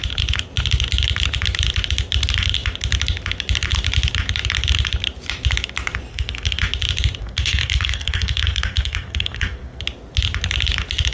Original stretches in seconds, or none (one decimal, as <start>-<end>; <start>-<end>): 0.0-6.1; 6.6-7.2; 9.8-11.1